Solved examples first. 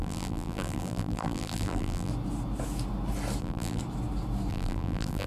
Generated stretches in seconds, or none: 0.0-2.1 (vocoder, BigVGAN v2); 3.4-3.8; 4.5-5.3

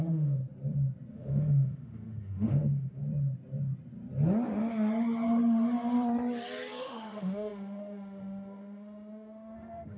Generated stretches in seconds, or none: 0.0-0.4 (autoencoder, DAC-VAE); 1.1-3.0; 6.8-10.0

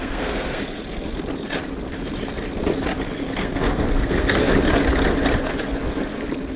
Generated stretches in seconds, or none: 0.0-0.8 (codec, SNAC); 3.3-4.5

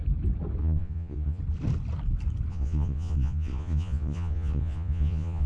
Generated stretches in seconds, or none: 0.6-1.4 (vocoder, Vocos); 2.5-5.5

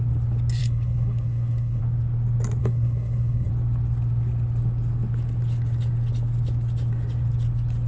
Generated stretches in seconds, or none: 0.6-1.8 (codec, HILCodec); 2.6-3.5

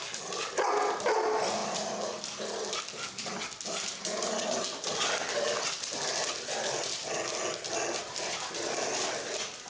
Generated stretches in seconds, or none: none

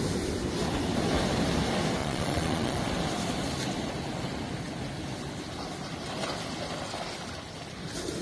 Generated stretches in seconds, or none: 2.0-2.8 (vocoder, Vocos)

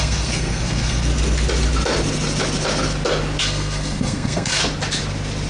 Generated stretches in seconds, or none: 0.0-1.1 (codec, SNAC); 3.4-4.6